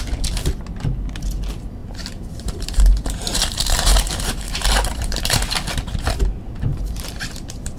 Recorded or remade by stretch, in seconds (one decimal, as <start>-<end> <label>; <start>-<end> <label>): 0.0-1.8 recorded; 1.8-5.4 remade; 5.4-6.7 recorded; 6.7-7.8 remade